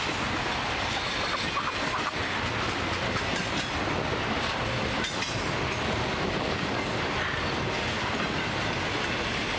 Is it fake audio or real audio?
real